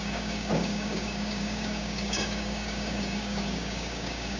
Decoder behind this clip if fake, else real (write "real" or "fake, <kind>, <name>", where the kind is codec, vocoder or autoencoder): fake, codec, DAC